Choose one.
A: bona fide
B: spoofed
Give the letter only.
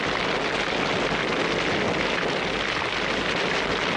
A